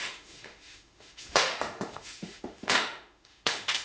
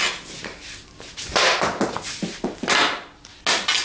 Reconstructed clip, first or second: first